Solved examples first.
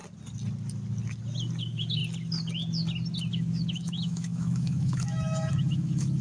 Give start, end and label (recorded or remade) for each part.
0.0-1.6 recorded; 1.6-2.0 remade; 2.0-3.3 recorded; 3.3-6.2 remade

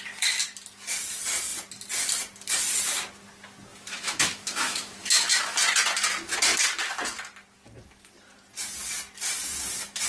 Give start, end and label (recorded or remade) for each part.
0.0-3.7 recorded; 3.7-5.3 remade; 5.3-10.1 recorded